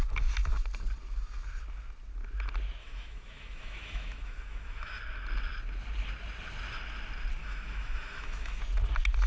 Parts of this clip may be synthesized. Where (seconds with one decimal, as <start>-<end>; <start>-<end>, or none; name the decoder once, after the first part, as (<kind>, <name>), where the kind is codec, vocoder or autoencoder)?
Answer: 2.8-5.0 (autoencoder, DAC-VAE); 7.4-8.6